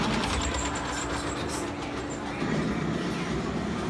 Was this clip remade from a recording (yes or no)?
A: no